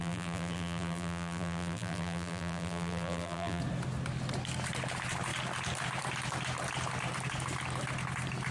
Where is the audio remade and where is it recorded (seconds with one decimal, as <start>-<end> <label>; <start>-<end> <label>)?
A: 0.0-3.6 remade; 3.6-8.5 recorded